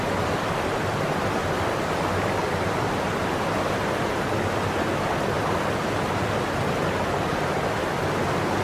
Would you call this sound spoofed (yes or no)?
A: no